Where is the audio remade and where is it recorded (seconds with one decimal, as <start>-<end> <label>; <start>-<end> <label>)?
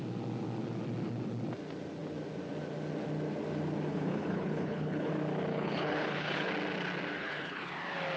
0.0-3.9 recorded; 3.9-5.1 remade; 5.1-5.5 recorded; 5.5-6.5 remade; 6.5-7.2 recorded; 7.2-7.7 remade; 7.7-8.2 recorded